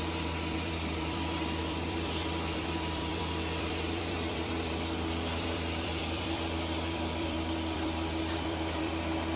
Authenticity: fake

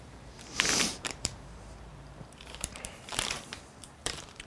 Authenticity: fake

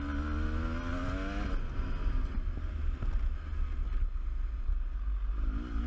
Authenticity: real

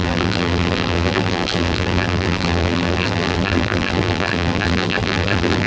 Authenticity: fake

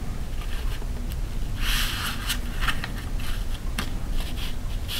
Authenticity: real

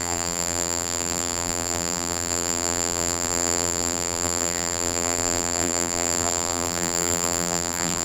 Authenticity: fake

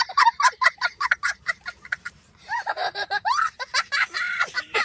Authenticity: fake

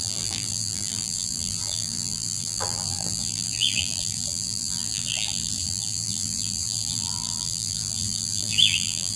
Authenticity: fake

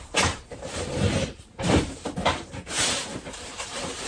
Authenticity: fake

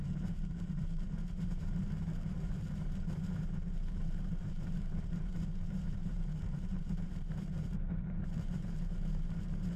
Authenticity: fake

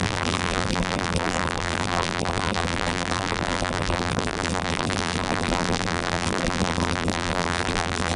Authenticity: fake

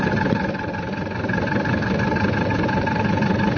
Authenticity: real